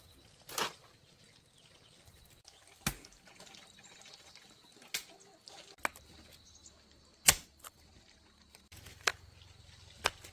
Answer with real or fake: real